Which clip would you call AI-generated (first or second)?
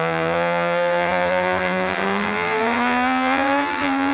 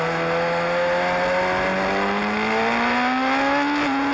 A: first